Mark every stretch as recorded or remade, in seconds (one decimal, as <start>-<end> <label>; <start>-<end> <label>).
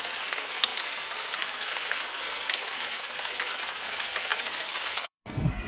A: 0.0-5.7 remade